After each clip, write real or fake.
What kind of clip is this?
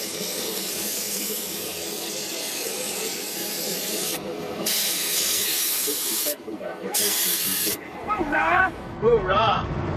fake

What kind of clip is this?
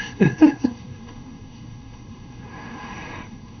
fake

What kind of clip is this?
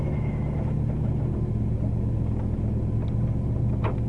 real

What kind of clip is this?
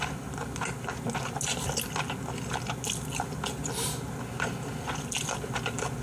real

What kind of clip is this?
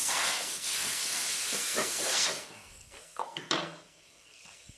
fake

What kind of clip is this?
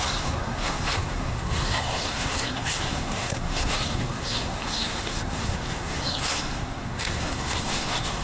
fake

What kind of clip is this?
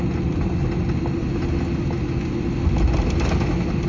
real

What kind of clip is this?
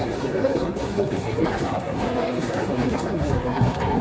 fake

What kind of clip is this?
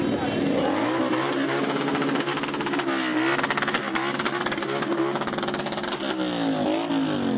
real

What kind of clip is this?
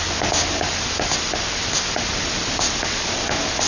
real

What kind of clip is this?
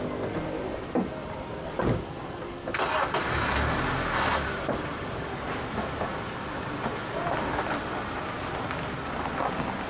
real